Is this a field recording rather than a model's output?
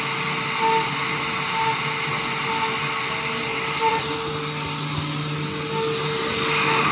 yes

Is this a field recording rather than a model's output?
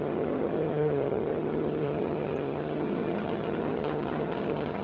no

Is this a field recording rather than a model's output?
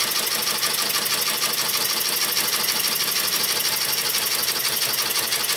yes